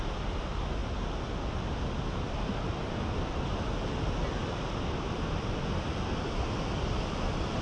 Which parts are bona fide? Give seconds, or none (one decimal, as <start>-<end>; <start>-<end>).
0.0-7.6